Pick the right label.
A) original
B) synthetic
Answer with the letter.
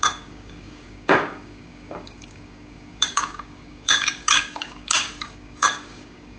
B